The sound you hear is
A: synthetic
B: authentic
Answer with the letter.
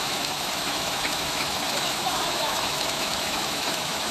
A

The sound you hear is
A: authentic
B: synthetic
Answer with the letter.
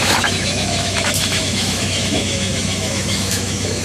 B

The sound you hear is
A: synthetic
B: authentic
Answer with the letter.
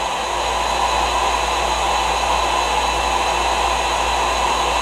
B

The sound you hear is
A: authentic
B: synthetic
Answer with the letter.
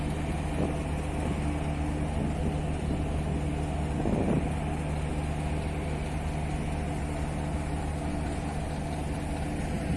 A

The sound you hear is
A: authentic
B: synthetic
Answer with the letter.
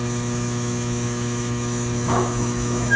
B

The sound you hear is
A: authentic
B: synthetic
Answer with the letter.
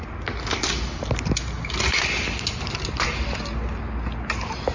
A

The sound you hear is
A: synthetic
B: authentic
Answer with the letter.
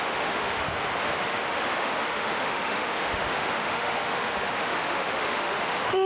A